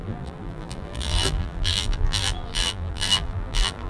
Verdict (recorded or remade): remade